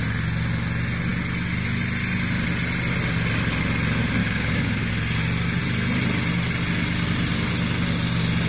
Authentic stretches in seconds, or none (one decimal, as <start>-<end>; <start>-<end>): 0.0-4.2; 4.9-8.5